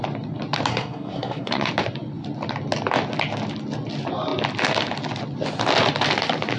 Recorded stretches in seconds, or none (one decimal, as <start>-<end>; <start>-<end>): 0.0-0.7; 1.7-6.6